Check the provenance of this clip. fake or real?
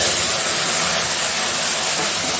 real